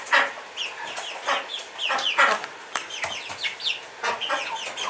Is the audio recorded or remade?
recorded